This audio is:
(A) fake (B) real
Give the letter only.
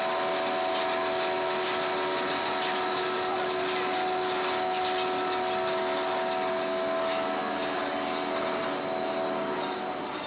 B